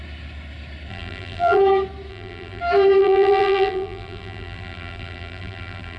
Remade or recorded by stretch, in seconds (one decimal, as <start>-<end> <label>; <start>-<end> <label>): 0.0-0.9 recorded; 0.9-1.6 remade; 1.6-2.1 recorded; 2.1-2.6 remade; 2.6-3.0 recorded; 3.0-6.0 remade